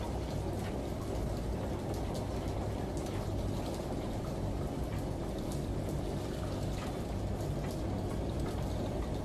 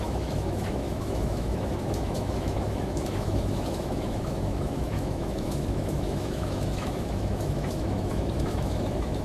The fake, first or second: second